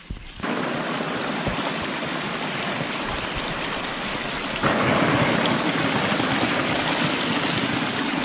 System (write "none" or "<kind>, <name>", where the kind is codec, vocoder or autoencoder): none